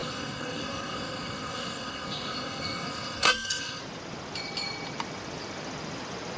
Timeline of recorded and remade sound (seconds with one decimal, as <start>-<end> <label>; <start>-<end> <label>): 0.0-3.8 remade; 3.8-6.4 recorded